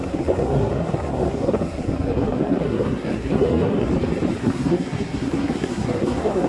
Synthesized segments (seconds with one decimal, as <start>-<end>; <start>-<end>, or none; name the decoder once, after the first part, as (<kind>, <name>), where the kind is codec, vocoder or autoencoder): 0.0-3.9 (codec, SNAC); 4.4-6.5